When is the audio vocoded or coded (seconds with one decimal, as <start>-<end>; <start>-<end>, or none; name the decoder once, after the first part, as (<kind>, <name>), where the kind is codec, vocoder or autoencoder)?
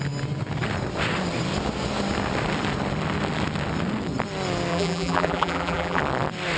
4.7-6.0 (vocoder, BigVGAN v2)